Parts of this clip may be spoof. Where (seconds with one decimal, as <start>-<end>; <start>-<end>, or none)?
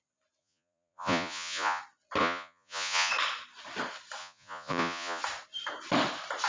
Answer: 0.4-1.8; 2.2-3.1; 4.2-5.2